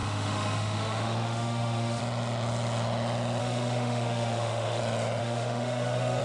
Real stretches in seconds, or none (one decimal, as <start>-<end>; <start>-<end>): 2.0-3.4; 4.8-5.2